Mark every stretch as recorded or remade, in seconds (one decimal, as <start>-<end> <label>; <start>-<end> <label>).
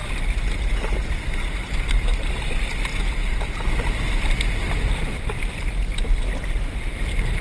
0.0-2.3 remade; 2.3-7.4 recorded